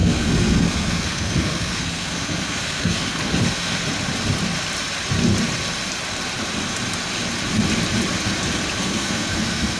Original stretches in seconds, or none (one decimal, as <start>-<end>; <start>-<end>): 3.8-8.8